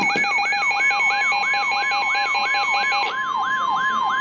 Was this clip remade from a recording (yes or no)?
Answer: no